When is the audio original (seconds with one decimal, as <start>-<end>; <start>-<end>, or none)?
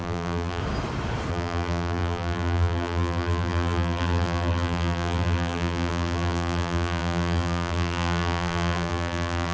0.6-1.3